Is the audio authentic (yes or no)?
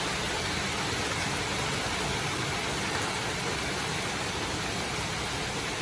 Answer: yes